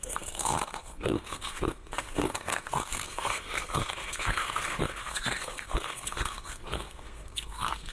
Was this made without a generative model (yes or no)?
no